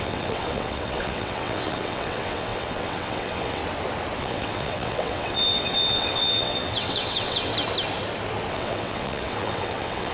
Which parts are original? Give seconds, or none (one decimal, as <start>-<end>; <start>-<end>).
3.6-4.2; 7.5-8.5